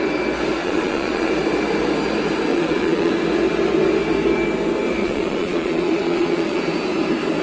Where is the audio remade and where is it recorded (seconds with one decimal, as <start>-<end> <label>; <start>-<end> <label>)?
0.0-0.6 recorded; 0.6-1.3 remade; 1.3-2.5 recorded; 2.5-3.1 remade; 3.1-5.0 recorded; 5.0-6.6 remade; 6.6-7.4 recorded